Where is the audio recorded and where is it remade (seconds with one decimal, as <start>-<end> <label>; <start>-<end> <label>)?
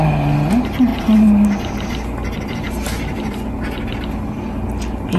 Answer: 0.0-5.2 recorded